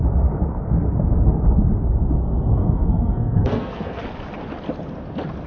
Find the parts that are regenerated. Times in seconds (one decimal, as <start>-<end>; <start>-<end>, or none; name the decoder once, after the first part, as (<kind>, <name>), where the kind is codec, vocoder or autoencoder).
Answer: 2.6-4.0 (codec, SNAC)